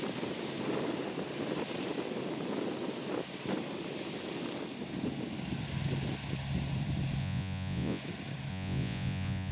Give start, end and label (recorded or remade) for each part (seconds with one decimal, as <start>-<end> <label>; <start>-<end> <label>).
0.0-7.2 recorded; 7.2-8.0 remade; 8.0-8.5 recorded; 8.5-9.5 remade